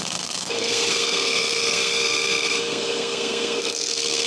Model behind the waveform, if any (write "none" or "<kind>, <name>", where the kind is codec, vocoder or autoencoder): codec, SNAC